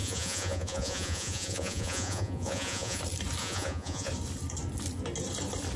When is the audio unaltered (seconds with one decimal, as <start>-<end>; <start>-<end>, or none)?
3.0-3.4; 4.1-5.8